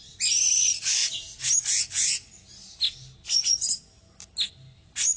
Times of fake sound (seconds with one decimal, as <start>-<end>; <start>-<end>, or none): none